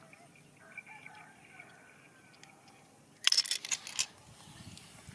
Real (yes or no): yes